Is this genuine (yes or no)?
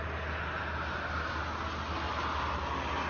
yes